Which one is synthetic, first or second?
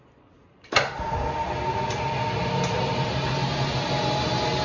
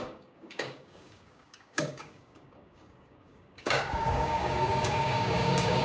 second